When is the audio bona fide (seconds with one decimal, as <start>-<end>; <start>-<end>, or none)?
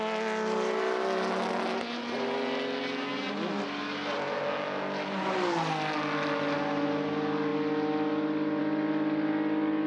0.0-9.9